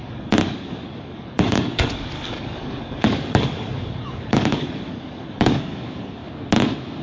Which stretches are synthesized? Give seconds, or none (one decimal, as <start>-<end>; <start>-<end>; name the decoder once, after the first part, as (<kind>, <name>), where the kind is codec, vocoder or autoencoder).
0.0-6.2 (codec, DAC)